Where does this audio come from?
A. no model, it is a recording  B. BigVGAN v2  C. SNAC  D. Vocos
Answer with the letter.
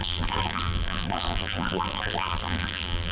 B